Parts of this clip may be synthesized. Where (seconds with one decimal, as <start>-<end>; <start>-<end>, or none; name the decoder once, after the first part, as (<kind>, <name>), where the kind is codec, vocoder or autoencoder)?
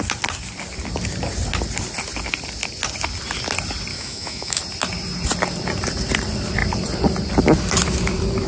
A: 3.9-4.6 (autoencoder, DAC-VAE)